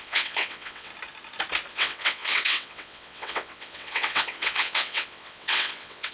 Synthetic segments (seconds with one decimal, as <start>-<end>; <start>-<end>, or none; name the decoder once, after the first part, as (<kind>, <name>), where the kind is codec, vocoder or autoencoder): 0.0-0.9 (vocoder, WaveNeXt); 1.7-6.1